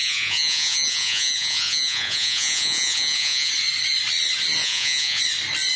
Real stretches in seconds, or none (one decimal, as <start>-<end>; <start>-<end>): 3.5-4.6; 5.2-5.8